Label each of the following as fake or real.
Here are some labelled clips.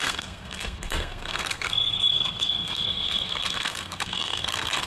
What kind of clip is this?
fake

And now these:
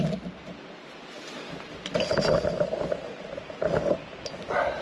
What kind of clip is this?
real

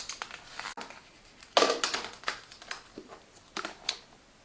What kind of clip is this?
real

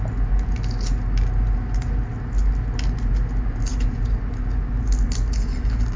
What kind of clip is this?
real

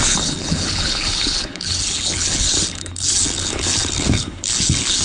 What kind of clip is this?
fake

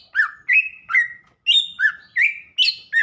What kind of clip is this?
real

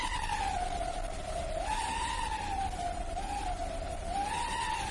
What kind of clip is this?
fake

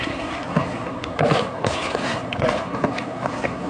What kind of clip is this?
fake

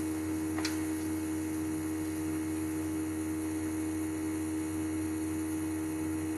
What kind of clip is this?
real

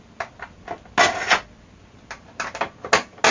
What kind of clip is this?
real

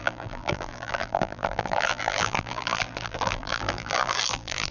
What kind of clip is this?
fake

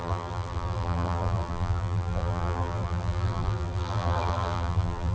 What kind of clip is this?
fake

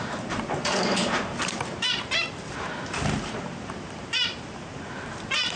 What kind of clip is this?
fake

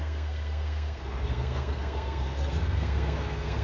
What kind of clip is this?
fake